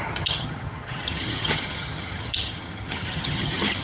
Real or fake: fake